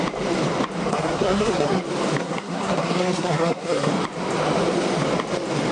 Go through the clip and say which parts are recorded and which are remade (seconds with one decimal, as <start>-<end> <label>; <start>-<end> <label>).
0.0-0.9 recorded; 0.9-1.8 remade; 1.8-2.2 recorded; 2.2-3.9 remade; 3.9-5.7 recorded